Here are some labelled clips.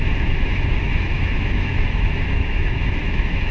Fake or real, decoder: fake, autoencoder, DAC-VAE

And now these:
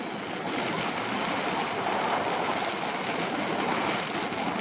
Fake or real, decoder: real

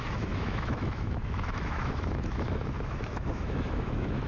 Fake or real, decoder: fake, autoencoder, DAC-VAE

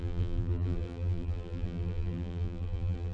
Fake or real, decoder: fake, vocoder, BigVGAN v2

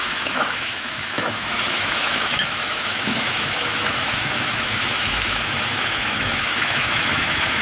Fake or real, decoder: fake, autoencoder, DAC-VAE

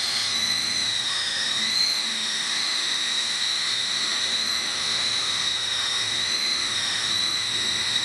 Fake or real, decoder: fake, autoencoder, DAC-VAE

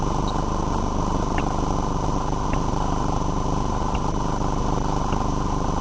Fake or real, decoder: real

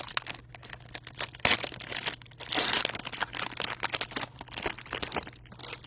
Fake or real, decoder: real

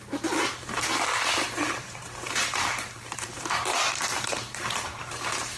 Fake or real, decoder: fake, vocoder, BigVGAN v2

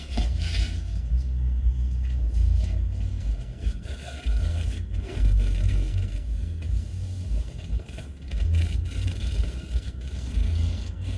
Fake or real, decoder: fake, codec, SNAC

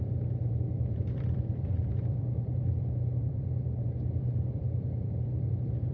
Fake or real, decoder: fake, vocoder, BigVGAN v2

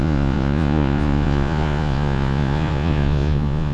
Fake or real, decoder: fake, vocoder, Vocos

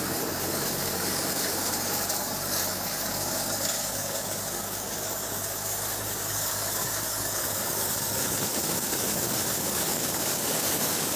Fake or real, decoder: fake, codec, DAC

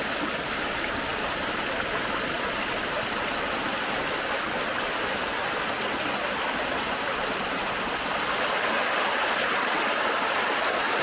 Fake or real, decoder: fake, vocoder, BigVGAN v2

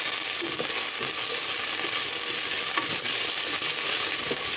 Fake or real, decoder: real